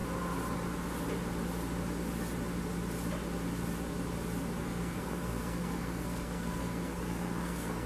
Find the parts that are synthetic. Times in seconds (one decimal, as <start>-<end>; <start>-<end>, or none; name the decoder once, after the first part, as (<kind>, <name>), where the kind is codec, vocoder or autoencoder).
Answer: 4.6-7.9 (codec, SNAC)